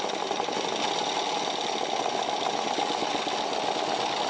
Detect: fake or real real